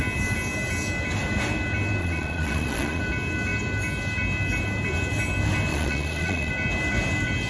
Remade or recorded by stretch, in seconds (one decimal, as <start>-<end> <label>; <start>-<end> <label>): 0.0-2.0 recorded; 2.0-3.0 remade; 3.0-5.7 recorded; 5.7-6.5 remade; 6.5-7.5 recorded